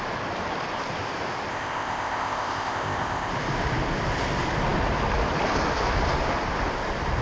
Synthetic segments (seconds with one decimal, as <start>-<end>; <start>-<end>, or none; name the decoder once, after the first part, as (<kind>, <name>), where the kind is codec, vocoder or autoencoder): 1.5-3.3 (codec, ZipCodec)